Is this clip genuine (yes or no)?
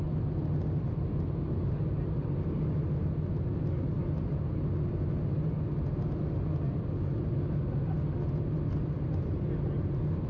yes